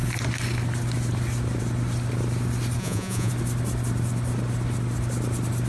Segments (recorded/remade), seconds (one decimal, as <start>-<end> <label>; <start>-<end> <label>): 0.0-2.8 recorded; 2.8-3.3 remade; 3.3-5.7 recorded